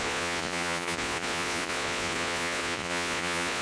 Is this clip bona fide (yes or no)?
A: no